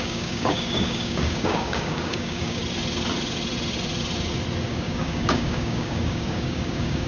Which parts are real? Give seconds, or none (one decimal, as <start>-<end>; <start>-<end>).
2.6-4.7